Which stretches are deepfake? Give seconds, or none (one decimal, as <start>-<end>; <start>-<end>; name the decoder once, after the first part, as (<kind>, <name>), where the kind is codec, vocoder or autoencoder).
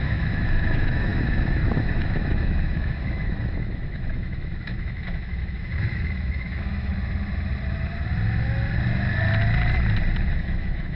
0.0-6.9 (autoencoder, DAC-VAE); 10.2-11.0